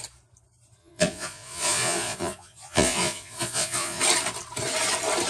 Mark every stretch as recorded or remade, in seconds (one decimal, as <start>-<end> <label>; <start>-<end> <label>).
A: 0.0-0.8 recorded; 0.8-4.0 remade; 4.0-5.3 recorded